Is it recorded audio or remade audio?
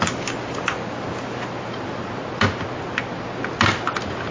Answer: recorded